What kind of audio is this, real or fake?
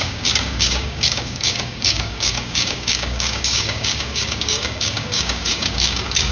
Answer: fake